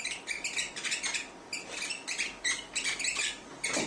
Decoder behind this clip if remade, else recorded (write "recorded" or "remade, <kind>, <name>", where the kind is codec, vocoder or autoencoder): recorded